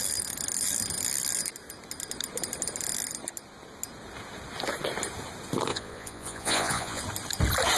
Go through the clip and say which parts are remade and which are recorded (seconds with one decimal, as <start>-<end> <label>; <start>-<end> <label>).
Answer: 0.0-5.7 recorded; 5.7-7.0 remade; 7.0-7.8 recorded